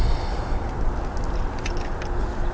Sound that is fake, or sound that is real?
real